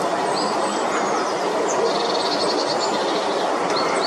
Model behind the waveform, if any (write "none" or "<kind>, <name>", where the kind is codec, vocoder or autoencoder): none